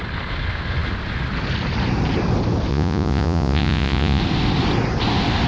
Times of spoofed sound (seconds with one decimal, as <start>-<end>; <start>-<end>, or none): 2.7-4.2